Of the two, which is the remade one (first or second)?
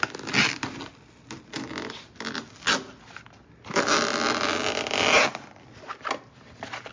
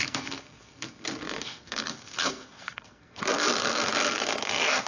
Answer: second